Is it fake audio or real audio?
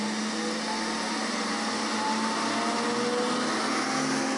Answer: real